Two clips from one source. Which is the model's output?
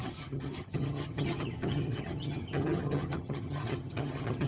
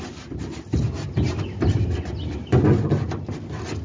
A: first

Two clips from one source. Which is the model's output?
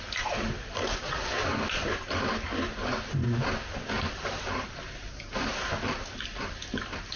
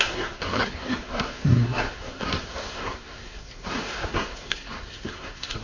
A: second